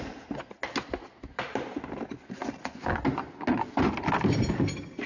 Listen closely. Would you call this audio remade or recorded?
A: recorded